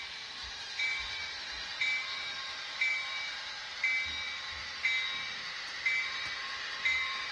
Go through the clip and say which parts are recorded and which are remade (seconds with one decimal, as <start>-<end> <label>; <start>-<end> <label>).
0.0-3.6 remade; 3.6-6.0 recorded; 6.0-7.3 remade